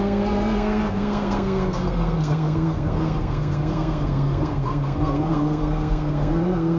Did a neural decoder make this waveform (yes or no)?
yes